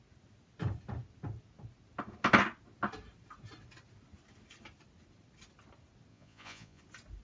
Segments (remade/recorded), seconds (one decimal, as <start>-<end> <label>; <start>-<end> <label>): 0.0-6.1 recorded; 6.1-6.8 remade; 6.8-7.2 recorded